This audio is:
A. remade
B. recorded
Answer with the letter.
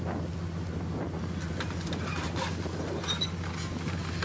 B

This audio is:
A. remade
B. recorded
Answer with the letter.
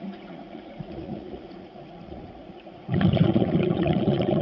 A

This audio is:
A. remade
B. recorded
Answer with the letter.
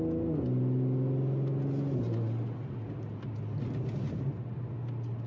B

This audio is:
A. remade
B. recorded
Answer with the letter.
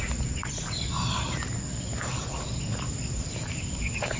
B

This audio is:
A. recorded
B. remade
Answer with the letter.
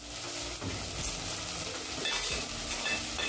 A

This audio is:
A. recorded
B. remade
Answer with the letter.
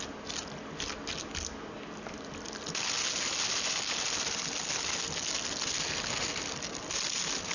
A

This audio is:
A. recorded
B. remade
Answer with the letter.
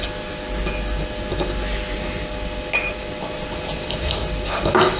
A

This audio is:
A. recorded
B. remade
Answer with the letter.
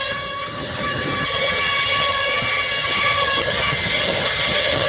B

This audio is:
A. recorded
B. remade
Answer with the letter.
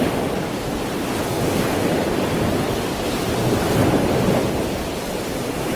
A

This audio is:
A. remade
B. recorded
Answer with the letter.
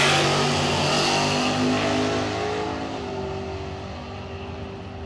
B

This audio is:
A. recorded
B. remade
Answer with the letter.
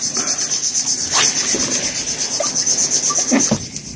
A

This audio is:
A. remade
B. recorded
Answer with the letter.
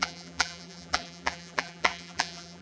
A